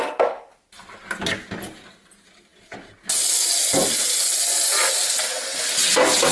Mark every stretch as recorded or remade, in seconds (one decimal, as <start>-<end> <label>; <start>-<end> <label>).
0.0-6.3 recorded